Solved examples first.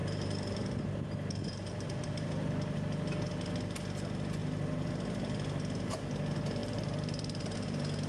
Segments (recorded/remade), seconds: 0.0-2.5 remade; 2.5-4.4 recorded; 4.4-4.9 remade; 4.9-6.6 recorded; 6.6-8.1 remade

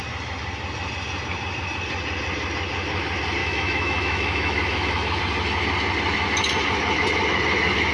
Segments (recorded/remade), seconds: 0.0-3.4 recorded; 3.4-5.2 remade; 5.2-7.9 recorded

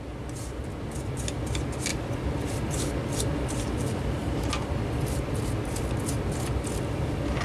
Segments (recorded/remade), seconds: 0.0-7.4 recorded

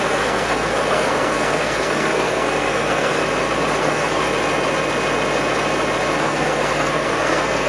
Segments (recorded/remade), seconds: 0.0-3.2 remade; 3.2-3.8 recorded; 3.8-4.2 remade; 4.2-6.2 recorded; 6.2-7.7 remade

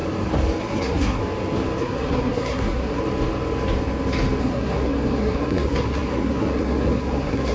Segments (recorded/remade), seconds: 0.0-0.6 recorded; 0.6-1.2 remade; 1.2-1.8 recorded; 1.8-3.0 remade; 3.0-4.4 recorded; 4.4-7.5 remade

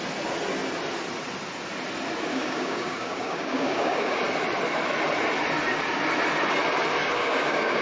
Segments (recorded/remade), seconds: 0.0-2.3 recorded; 2.3-4.2 remade; 4.2-7.0 recorded; 7.0-7.8 remade

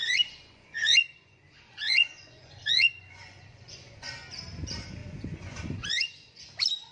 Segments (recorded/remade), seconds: 0.0-4.1 remade; 4.1-5.0 recorded; 5.0-6.4 remade; 6.4-6.9 recorded

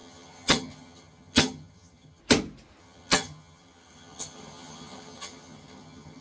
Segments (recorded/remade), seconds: 0.0-2.2 remade; 2.2-2.8 recorded; 2.8-6.2 remade